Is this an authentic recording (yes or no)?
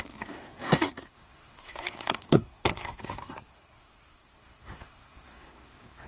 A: no